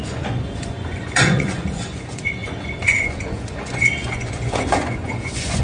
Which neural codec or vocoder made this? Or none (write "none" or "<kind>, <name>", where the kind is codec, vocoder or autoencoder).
vocoder, Vocos